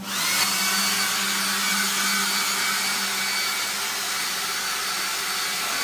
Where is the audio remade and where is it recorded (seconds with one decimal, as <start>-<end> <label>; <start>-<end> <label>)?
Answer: 0.0-5.8 recorded